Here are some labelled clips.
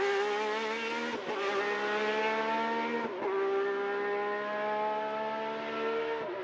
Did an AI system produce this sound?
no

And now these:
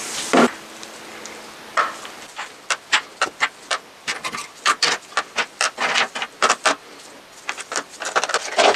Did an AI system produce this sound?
yes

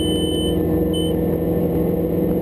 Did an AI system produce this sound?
no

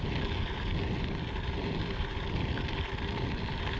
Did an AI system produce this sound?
no